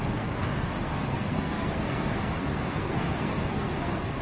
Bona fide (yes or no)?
no